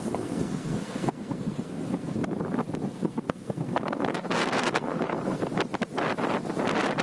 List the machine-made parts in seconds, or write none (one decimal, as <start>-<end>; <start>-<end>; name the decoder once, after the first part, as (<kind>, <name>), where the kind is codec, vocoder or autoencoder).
0.0-2.2 (codec, SNAC); 2.8-5.5